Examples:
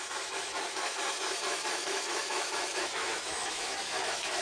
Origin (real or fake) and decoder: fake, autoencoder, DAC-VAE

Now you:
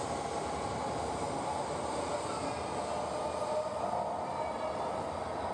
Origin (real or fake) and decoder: real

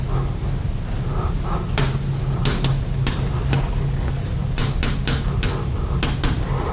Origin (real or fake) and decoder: real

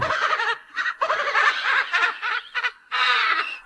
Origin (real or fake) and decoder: fake, vocoder, Vocos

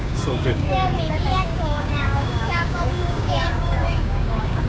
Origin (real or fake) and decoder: fake, codec, DAC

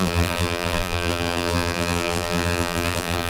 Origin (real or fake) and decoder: fake, vocoder, BigVGAN v2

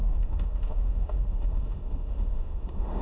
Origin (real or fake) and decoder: fake, autoencoder, DAC-VAE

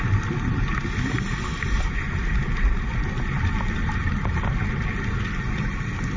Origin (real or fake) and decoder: real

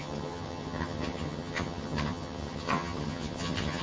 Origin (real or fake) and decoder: fake, vocoder, HiFi-GAN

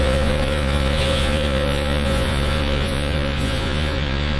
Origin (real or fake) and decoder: fake, vocoder, Vocos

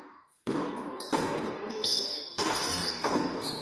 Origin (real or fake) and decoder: fake, codec, DAC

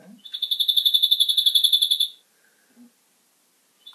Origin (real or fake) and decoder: real